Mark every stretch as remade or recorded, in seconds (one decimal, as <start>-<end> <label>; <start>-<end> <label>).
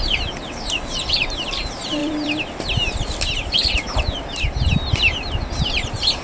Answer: 0.0-6.2 remade